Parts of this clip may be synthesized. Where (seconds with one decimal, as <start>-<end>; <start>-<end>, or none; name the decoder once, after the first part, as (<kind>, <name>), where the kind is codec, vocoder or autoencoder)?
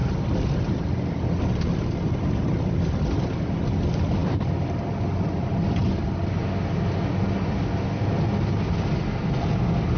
none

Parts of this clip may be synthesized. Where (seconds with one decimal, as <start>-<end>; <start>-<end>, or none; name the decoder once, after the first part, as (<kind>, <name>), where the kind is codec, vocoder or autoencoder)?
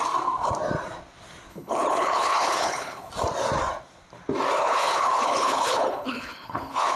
1.5-3.1 (codec, HILCodec); 4.6-7.0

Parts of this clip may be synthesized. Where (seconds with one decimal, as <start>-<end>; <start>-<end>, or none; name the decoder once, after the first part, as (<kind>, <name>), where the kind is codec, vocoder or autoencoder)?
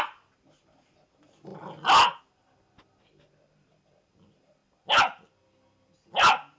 none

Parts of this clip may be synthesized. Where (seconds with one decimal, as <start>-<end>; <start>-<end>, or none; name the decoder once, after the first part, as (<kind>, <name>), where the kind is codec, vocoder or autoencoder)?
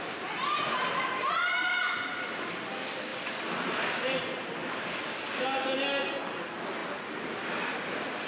3.1-3.7 (vocoder, BigVGAN v2); 4.6-5.3; 6.8-7.5